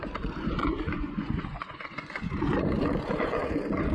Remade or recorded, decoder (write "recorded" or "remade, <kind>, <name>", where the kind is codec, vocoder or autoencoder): remade, vocoder, Vocos